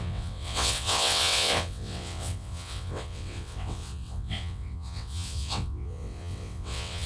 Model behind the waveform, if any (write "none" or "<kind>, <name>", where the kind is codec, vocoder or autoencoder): vocoder, WaveNeXt